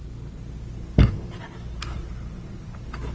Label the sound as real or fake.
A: real